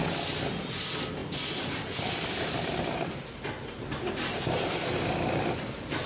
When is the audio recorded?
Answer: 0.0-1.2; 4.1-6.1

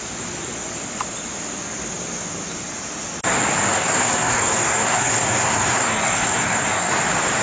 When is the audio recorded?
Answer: 0.0-3.7; 6.9-7.4

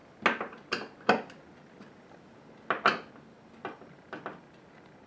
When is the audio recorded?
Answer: 0.0-5.1

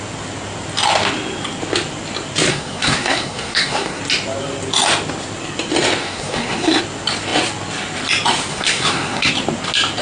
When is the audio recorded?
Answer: 0.0-2.5; 4.0-6.0; 6.8-8.5; 9.3-10.0

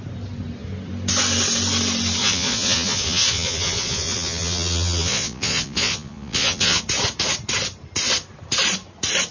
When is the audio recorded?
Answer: 0.0-2.2; 6.8-9.3

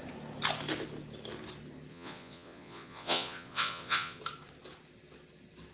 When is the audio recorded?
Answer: 0.0-1.9; 4.2-5.7

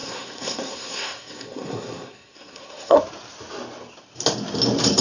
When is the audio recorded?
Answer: 3.0-5.0